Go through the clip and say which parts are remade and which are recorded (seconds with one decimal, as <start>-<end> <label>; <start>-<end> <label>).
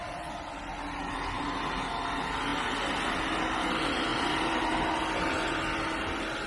0.0-0.6 remade; 0.6-4.1 recorded; 4.1-4.7 remade; 4.7-6.5 recorded